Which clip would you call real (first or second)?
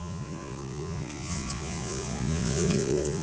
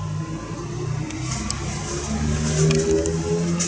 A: second